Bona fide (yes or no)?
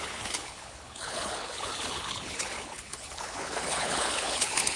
no